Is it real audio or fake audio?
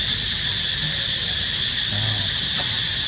real